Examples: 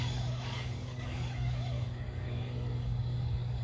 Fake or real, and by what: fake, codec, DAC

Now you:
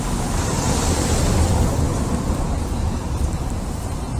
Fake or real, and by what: real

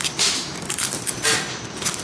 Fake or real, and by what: real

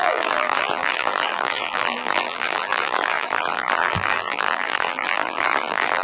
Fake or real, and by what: fake, vocoder, BigVGAN v2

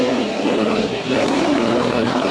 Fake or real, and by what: fake, codec, SNAC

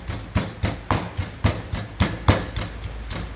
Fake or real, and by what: real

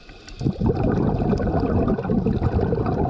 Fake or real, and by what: real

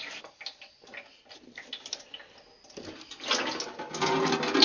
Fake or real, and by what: real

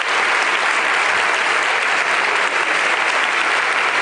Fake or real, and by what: real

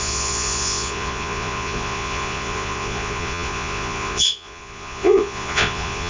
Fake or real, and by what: fake, vocoder, Vocos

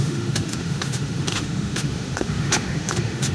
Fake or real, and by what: fake, autoencoder, DAC-VAE